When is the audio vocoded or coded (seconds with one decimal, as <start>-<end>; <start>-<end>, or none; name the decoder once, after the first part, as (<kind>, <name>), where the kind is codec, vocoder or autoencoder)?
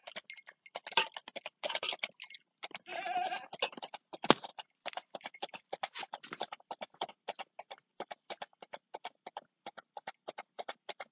4.5-7.1 (vocoder, BigVGAN v2)